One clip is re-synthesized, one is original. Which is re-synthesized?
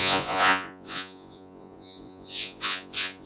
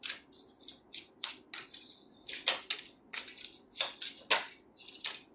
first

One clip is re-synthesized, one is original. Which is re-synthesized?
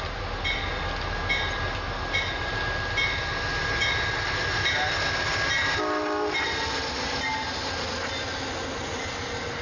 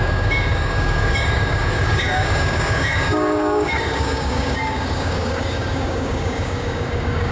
second